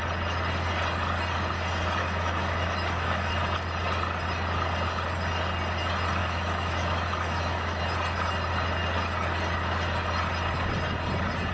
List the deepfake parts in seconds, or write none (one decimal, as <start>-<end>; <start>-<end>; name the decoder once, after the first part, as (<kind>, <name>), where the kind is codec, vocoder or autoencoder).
2.0-3.3 (autoencoder, DAC-VAE); 6.2-7.8